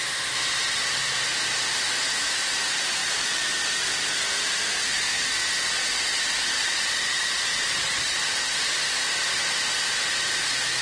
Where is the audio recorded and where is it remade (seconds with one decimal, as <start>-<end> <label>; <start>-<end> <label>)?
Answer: 0.0-3.0 recorded; 3.0-3.8 remade; 3.8-6.6 recorded; 6.6-8.4 remade; 8.4-9.7 recorded; 9.7-10.4 remade; 10.4-10.8 recorded